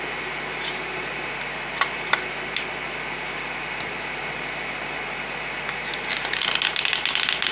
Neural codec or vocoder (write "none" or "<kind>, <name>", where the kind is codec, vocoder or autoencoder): none